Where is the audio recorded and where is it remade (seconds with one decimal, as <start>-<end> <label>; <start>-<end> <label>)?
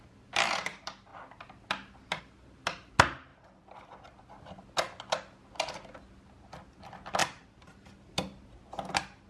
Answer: 0.0-7.2 recorded; 7.2-8.1 remade; 8.1-9.3 recorded